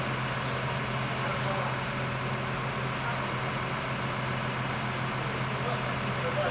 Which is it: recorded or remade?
recorded